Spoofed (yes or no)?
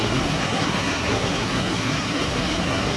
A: yes